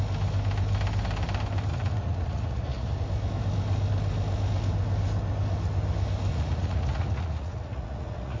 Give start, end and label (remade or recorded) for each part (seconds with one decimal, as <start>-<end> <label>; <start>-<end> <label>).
0.0-1.7 recorded; 1.7-3.0 remade; 3.0-6.3 recorded; 6.3-8.4 remade